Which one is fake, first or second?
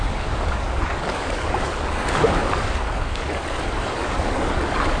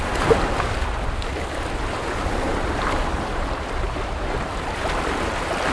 first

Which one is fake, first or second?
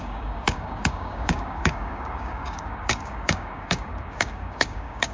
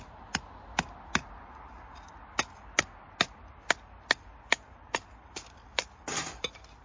first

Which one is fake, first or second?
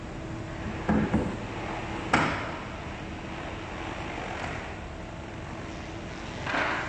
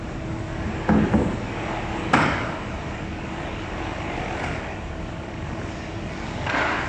second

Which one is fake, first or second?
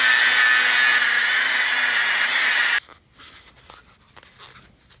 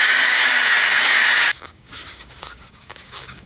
second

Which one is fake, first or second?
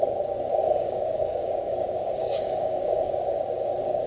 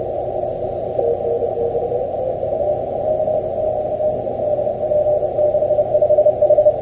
first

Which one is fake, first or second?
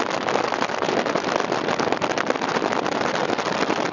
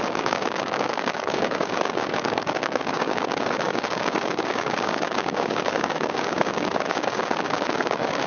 second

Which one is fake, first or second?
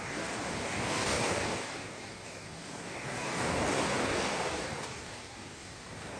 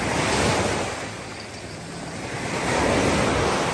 first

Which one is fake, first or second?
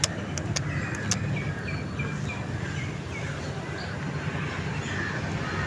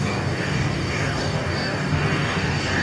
second